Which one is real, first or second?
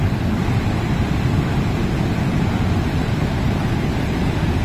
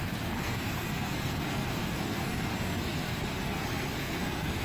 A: first